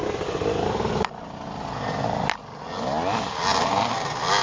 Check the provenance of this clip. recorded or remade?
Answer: recorded